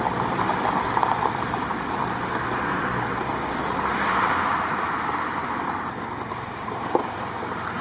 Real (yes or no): no